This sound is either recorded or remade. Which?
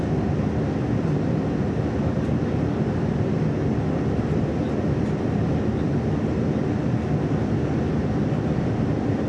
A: recorded